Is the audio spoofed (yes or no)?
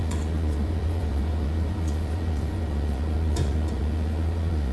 yes